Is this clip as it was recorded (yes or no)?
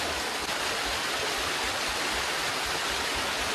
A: yes